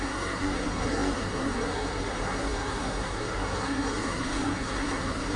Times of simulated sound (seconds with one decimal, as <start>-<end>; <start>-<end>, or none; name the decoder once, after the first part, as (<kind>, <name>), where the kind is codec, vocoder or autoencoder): 0.0-5.4 (codec, SNAC)